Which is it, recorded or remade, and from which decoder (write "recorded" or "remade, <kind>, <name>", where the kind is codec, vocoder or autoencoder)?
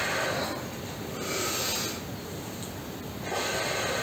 recorded